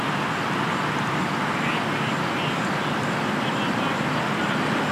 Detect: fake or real real